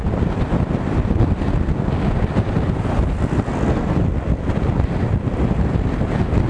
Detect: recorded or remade recorded